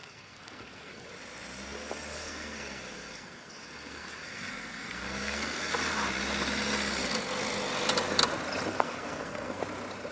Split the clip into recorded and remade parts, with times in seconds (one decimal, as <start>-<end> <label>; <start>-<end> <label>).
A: 0.0-1.1 remade; 1.1-2.1 recorded; 2.1-5.7 remade; 5.7-8.7 recorded; 8.7-9.6 remade; 9.6-10.1 recorded

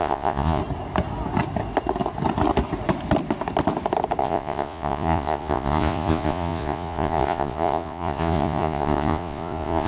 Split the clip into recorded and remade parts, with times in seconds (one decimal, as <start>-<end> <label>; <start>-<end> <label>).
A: 0.0-0.6 remade; 0.6-4.2 recorded; 4.2-9.9 remade